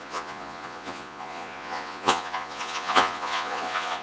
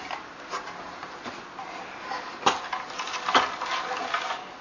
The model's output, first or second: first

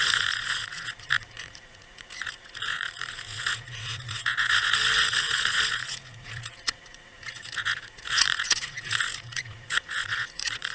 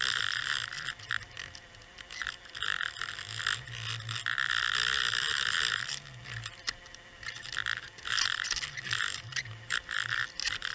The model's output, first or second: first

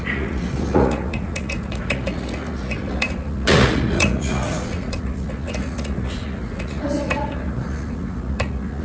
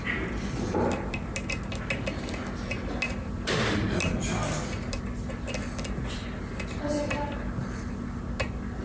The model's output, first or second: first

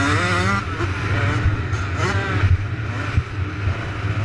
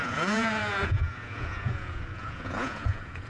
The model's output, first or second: second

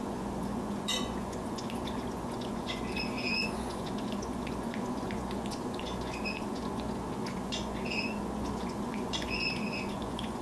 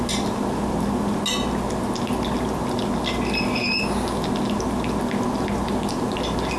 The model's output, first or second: first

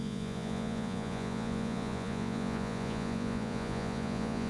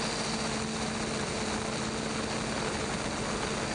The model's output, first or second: first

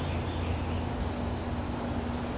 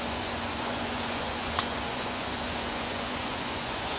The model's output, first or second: second